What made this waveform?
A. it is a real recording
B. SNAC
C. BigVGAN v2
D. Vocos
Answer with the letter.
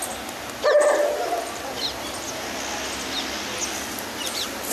A